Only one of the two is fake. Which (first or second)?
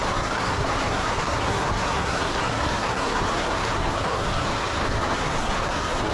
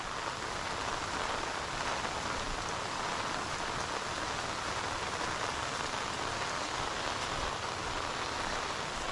first